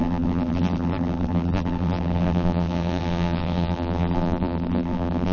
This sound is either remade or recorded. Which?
remade